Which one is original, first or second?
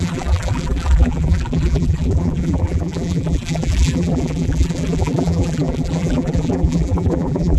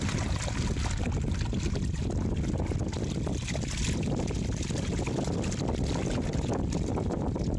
second